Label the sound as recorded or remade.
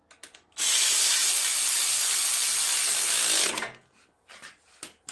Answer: recorded